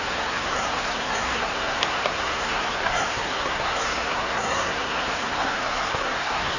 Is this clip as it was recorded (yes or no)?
no